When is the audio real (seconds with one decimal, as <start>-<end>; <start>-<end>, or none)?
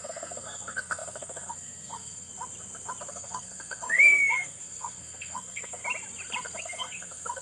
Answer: 2.3-3.1; 5.8-6.6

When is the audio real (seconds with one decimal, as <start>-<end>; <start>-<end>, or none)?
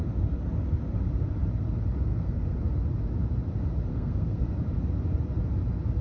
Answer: 0.0-2.1; 2.6-3.9; 4.5-6.0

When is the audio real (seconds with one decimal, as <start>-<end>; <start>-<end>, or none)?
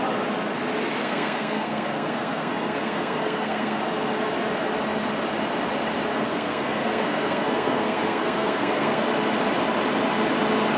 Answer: 0.0-1.0; 3.8-6.1; 9.0-10.8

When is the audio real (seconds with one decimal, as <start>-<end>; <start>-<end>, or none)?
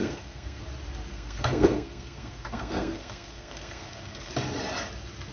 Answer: 0.6-1.1; 4.3-5.3